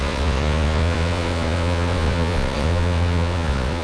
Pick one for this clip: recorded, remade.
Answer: remade